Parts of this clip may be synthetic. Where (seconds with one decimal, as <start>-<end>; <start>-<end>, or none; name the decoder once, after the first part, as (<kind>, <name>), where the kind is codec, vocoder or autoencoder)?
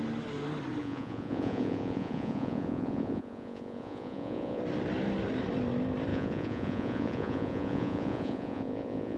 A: 0.8-4.6 (vocoder, Vocos); 6.1-9.2